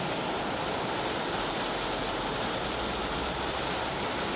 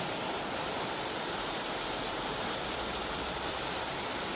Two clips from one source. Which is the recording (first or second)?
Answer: first